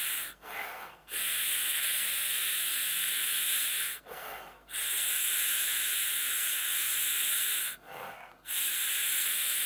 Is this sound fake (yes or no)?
yes